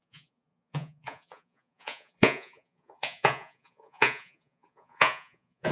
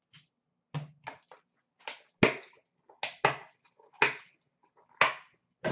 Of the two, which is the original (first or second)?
second